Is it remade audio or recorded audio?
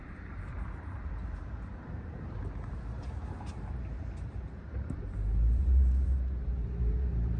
remade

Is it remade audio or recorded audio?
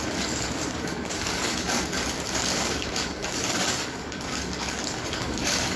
remade